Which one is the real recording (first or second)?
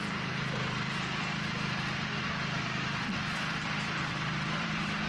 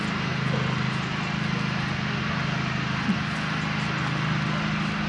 second